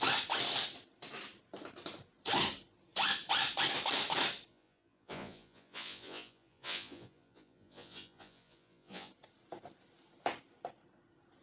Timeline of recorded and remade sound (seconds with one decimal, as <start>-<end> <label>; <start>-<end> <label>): 0.0-4.5 recorded; 4.5-9.1 remade; 9.1-11.4 recorded